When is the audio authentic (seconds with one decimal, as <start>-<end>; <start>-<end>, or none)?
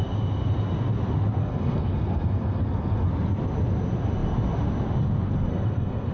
0.0-1.4; 3.1-5.5